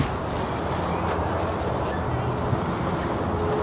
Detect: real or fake real